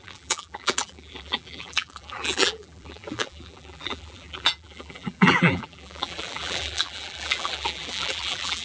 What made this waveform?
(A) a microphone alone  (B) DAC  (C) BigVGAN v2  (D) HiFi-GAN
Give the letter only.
C